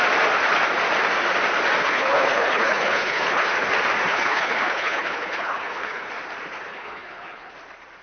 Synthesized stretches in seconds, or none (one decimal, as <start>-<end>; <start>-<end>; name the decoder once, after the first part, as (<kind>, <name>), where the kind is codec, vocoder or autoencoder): 1.8-3.5 (codec, HILCodec); 4.1-6.1; 6.7-7.5